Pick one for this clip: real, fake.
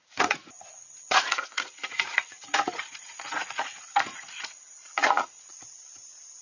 fake